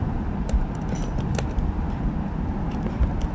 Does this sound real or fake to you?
real